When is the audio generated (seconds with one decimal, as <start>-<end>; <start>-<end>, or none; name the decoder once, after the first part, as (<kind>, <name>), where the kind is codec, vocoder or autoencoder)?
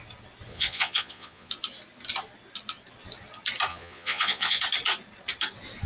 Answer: 0.5-1.5 (vocoder, Vocos); 3.7-4.6